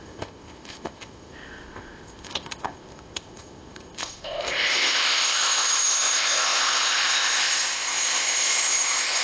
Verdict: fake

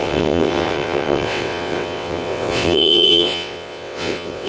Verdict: fake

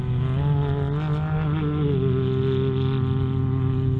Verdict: real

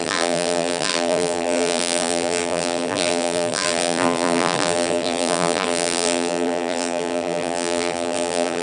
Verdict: fake